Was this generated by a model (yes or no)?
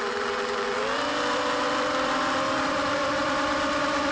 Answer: yes